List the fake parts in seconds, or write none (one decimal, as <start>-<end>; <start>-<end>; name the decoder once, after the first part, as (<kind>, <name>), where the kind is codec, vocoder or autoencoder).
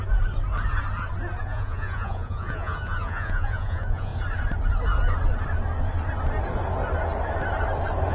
1.4-4.1 (vocoder, Vocos)